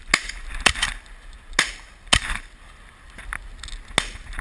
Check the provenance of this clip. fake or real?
real